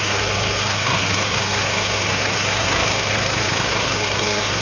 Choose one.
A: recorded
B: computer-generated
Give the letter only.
B